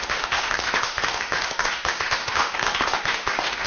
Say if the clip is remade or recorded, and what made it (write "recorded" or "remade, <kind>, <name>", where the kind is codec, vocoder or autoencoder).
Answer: remade, autoencoder, DAC-VAE